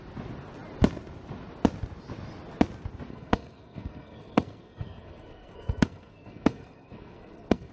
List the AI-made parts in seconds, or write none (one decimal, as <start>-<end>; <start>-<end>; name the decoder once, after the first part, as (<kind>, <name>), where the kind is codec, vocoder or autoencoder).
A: 3.1-7.7 (codec, SNAC)